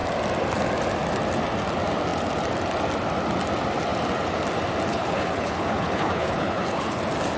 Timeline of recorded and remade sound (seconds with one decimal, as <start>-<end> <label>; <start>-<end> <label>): 0.0-4.9 recorded; 4.9-7.0 remade; 7.0-7.4 recorded